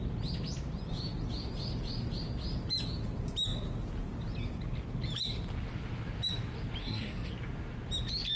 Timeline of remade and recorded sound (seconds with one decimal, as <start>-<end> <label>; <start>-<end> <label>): 0.0-6.8 recorded; 6.8-7.3 remade; 7.3-8.4 recorded